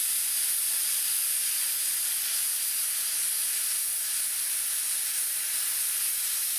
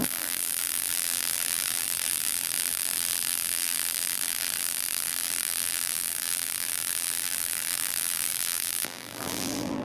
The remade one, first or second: second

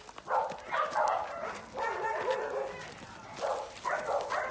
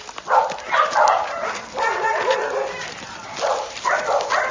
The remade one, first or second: second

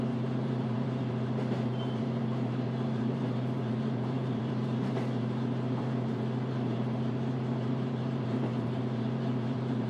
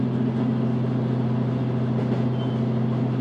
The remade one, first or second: first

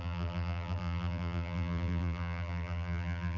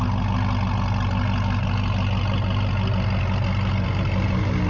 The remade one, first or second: first